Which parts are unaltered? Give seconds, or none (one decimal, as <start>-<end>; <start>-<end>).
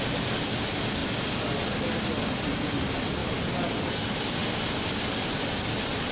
1.0-2.2; 3.2-4.1